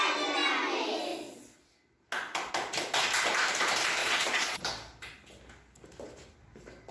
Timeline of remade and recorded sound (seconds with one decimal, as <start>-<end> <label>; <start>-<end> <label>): 0.0-4.0 recorded; 4.0-4.6 remade; 4.6-6.9 recorded